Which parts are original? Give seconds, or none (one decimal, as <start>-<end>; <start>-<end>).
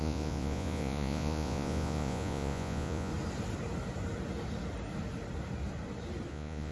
3.1-6.3